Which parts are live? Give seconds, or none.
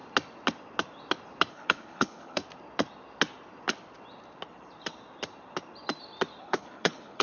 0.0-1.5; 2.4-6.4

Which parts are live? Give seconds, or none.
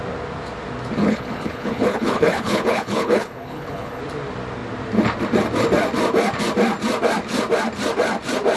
0.0-1.0; 4.0-8.6